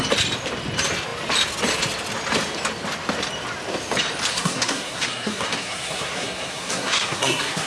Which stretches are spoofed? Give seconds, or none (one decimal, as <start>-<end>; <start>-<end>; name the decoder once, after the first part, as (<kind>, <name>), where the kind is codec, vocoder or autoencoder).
4.3-7.7 (codec, SNAC)

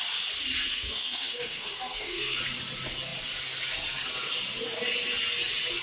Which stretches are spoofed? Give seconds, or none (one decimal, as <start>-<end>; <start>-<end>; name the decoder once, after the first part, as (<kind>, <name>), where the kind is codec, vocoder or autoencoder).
0.7-2.4 (codec, SNAC)

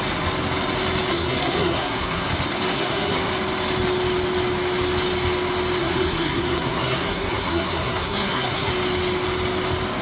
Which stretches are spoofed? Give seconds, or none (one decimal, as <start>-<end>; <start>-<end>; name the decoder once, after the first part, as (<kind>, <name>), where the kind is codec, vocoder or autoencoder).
1.1-2.3 (codec, SNAC); 2.7-3.3; 5.8-8.7

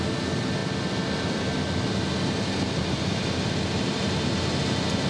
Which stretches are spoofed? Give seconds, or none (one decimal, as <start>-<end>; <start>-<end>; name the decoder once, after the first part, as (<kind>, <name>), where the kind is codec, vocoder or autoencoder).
none

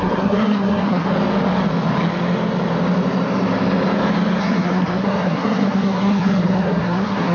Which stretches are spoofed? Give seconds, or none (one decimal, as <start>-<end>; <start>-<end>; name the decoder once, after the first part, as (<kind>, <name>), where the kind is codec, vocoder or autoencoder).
0.0-1.1 (codec, SNAC); 4.4-7.3

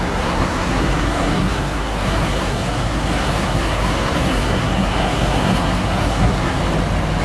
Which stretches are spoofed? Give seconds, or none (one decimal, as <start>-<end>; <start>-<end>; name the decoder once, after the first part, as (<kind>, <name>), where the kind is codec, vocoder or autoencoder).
0.0-6.6 (codec, SNAC)